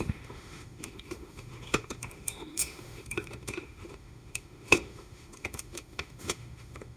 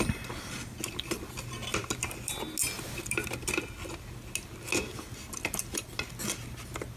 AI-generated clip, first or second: first